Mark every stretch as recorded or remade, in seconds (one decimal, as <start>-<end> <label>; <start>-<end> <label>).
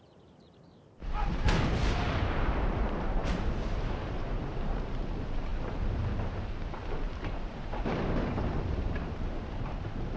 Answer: 0.0-10.2 remade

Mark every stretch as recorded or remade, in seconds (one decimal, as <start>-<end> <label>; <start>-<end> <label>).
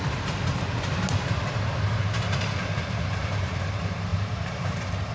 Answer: 0.0-0.4 remade; 0.4-2.9 recorded; 2.9-5.1 remade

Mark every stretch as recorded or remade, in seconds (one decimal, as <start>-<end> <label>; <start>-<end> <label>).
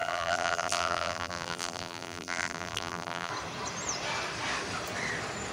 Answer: 0.0-3.3 remade; 3.3-5.5 recorded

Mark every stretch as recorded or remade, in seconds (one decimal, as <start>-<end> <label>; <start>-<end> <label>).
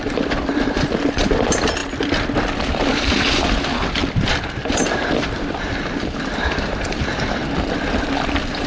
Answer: 0.0-8.7 remade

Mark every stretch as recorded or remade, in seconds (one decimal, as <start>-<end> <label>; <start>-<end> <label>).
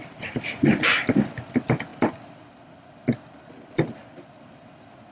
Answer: 0.0-5.1 remade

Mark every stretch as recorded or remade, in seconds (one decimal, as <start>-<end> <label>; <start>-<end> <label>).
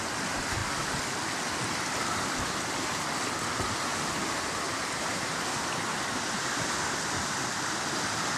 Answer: 0.0-0.6 recorded; 0.6-2.7 remade; 2.7-3.9 recorded; 3.9-7.2 remade; 7.2-8.4 recorded